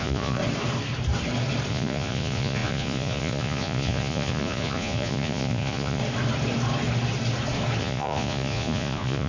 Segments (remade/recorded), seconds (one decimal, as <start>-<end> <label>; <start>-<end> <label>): 0.0-0.4 remade; 0.4-1.7 recorded; 1.7-6.0 remade; 6.0-7.8 recorded; 7.8-9.3 remade